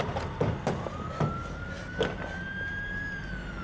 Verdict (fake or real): real